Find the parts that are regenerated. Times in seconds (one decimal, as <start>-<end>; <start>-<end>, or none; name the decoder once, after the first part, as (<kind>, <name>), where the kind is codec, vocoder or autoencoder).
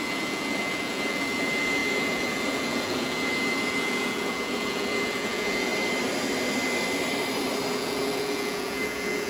0.0-5.7 (vocoder, Vocos); 7.7-9.3